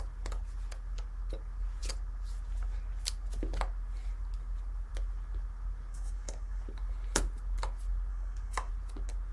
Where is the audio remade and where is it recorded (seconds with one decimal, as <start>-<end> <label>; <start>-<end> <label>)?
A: 0.0-5.9 recorded; 5.9-6.6 remade; 6.6-8.1 recorded; 8.1-8.7 remade; 8.7-9.3 recorded